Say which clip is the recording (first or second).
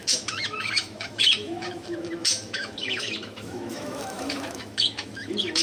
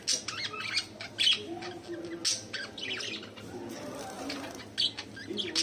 second